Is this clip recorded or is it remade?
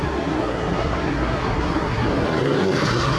remade